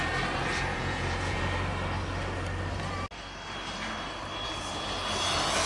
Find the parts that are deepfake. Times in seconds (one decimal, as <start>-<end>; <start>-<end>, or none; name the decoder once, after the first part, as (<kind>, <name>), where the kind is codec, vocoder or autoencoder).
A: 0.7-1.4 (vocoder, Vocos)